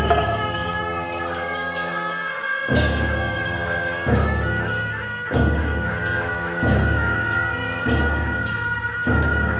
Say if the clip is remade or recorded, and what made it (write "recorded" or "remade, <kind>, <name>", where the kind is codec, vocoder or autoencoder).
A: remade, codec, DAC